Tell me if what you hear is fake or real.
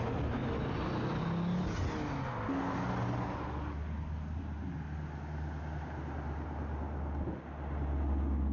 real